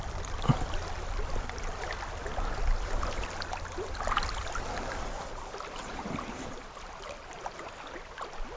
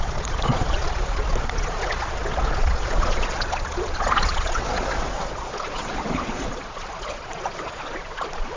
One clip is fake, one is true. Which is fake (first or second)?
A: second